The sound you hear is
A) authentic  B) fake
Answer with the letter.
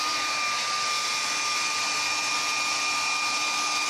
A